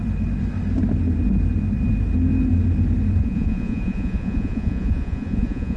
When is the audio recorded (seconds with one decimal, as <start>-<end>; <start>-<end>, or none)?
0.0-3.2